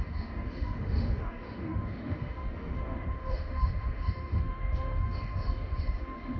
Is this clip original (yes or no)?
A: no